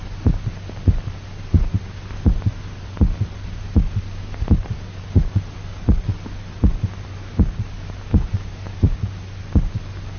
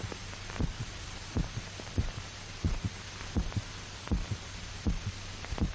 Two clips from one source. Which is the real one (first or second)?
first